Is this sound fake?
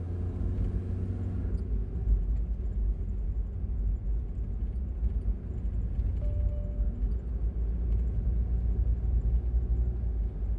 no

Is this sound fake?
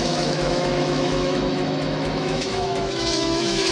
yes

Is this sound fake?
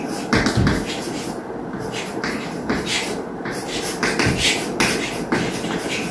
no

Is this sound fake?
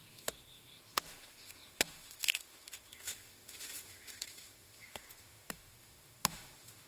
yes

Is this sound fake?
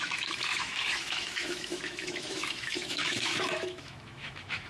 yes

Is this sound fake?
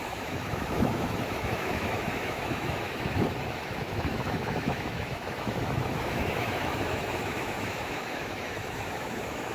yes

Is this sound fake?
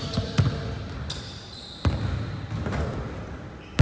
no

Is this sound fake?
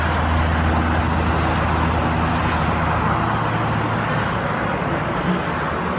no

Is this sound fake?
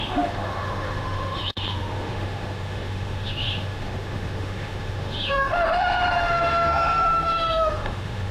yes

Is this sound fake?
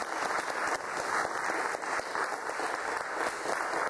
no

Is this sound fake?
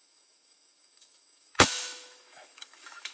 yes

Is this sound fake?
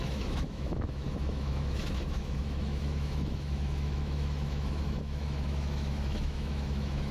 yes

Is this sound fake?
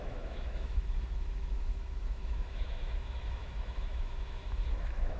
yes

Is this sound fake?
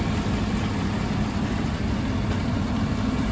no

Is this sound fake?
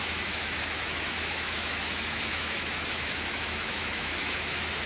yes